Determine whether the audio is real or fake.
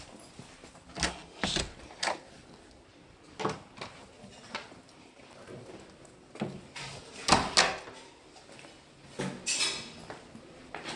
real